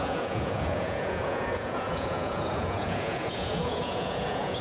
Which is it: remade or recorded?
remade